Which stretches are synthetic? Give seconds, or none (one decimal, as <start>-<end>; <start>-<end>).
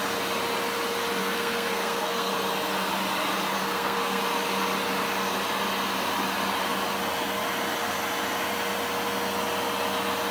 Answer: 1.2-2.3; 3.6-4.2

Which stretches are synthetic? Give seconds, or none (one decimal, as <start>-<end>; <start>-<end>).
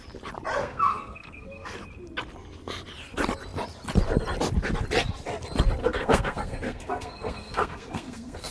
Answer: 0.6-1.7; 5.8-8.5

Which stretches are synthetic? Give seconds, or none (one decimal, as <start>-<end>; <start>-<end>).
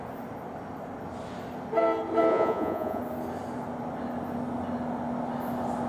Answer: 2.3-3.0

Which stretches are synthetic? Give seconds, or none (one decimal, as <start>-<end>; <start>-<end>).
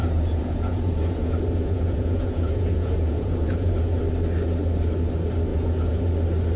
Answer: 0.0-4.0; 5.5-6.1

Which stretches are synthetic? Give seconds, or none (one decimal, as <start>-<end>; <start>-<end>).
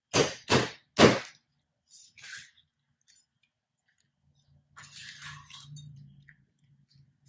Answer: 5.0-6.6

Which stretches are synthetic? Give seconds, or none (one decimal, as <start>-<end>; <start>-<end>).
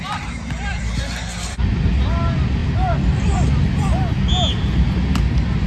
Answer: 0.0-1.7